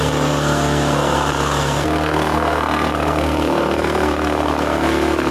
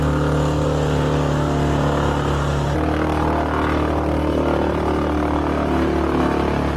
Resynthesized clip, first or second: first